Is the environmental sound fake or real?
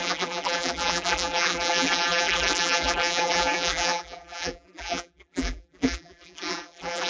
fake